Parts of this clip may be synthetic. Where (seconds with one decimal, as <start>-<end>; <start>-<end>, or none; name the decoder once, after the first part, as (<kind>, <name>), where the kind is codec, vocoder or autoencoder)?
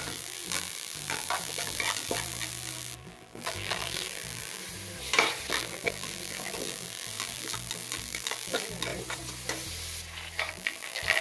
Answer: 0.0-4.6 (vocoder, BigVGAN v2); 5.5-8.9; 10.5-11.2